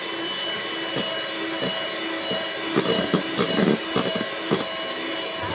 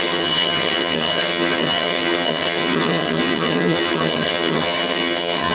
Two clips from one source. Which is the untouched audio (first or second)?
first